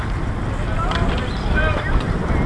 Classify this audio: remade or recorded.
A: recorded